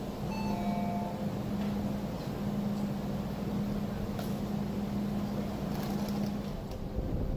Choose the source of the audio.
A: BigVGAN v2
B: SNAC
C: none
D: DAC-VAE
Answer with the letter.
C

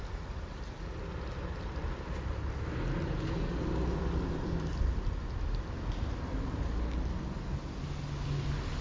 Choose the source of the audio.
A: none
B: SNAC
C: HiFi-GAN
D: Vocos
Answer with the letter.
A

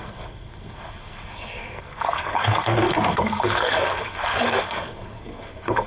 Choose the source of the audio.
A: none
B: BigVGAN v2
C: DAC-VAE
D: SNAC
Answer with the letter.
D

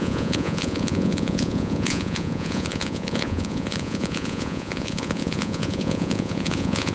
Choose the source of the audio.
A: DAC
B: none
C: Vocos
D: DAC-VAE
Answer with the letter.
C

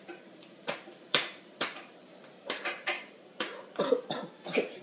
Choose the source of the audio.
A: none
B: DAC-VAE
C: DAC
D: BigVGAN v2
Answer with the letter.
D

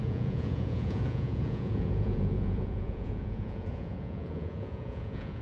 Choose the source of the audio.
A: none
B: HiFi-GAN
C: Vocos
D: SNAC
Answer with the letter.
C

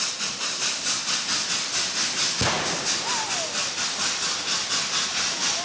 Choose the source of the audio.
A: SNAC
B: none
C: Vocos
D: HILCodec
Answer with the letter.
B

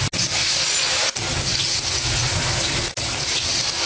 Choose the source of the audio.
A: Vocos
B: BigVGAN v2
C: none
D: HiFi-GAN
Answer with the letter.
C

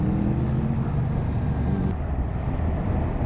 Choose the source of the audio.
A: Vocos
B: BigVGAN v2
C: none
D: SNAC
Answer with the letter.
C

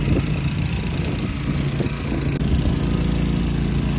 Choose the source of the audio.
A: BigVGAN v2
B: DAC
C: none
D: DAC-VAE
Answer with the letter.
C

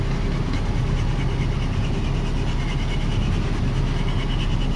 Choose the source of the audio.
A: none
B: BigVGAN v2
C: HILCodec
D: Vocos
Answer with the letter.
A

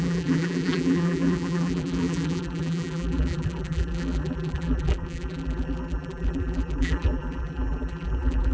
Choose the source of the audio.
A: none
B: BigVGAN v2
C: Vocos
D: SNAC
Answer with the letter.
B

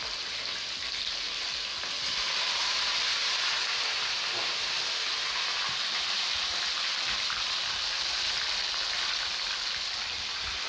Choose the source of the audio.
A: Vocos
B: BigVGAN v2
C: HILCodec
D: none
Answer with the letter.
D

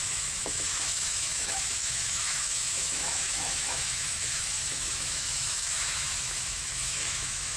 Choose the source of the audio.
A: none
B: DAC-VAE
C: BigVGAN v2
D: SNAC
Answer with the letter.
B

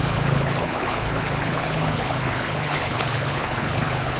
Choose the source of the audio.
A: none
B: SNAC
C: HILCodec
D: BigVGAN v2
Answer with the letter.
C